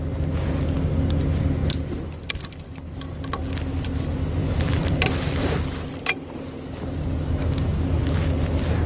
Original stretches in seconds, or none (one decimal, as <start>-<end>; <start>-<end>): 0.0-4.4; 6.4-8.9